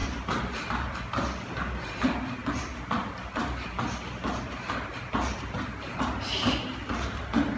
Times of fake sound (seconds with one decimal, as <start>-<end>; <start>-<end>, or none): none